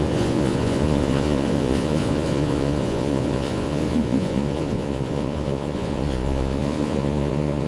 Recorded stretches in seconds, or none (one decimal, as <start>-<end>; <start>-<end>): none